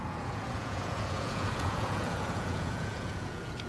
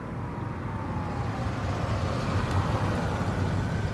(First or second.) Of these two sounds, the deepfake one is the first